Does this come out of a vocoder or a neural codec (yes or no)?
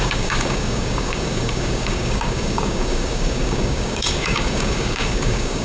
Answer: yes